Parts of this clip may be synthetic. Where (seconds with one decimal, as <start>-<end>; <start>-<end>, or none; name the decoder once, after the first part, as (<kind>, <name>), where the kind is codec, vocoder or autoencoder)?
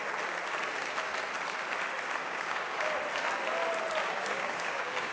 2.2-2.9 (codec, DAC); 4.0-5.1